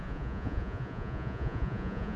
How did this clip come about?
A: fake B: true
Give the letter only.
A